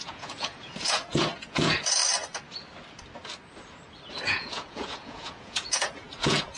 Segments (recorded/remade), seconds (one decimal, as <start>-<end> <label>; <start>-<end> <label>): 0.0-2.0 remade; 2.0-4.1 recorded; 4.1-6.6 remade